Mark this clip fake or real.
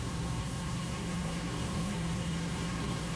fake